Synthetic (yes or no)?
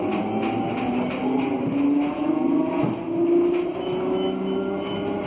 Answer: no